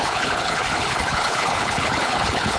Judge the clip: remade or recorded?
remade